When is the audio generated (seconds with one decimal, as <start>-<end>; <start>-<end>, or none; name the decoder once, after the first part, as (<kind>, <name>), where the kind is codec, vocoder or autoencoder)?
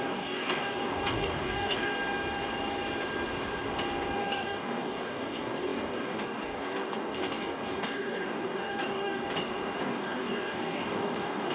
0.0-1.9 (codec, DAC); 4.2-9.2; 9.8-11.5